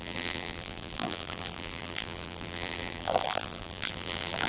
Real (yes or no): no